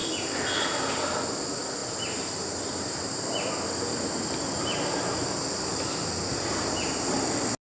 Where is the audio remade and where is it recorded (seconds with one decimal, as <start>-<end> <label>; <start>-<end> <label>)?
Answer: 0.0-7.7 recorded